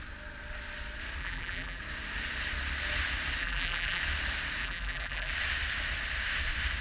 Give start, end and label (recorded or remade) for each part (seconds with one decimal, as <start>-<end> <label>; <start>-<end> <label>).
0.0-1.2 recorded; 1.2-1.8 remade; 1.8-3.4 recorded; 3.4-4.0 remade; 4.0-4.6 recorded; 4.6-5.3 remade; 5.3-6.8 recorded